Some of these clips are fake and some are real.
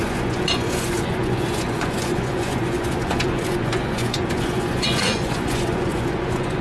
fake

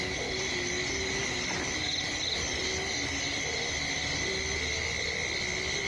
real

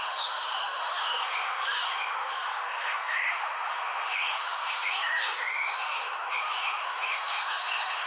fake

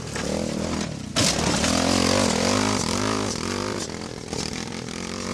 real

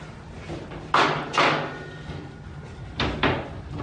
real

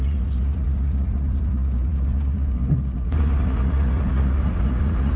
fake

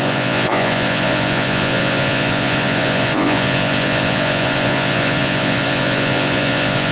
fake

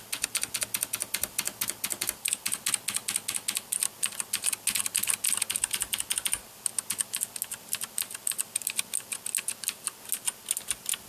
real